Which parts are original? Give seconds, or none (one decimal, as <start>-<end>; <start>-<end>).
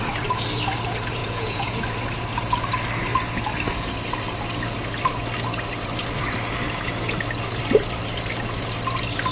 0.0-1.2; 1.8-9.3